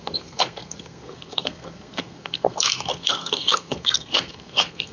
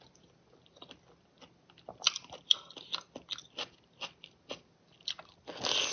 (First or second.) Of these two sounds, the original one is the second